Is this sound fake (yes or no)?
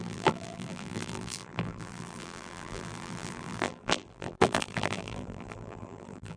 yes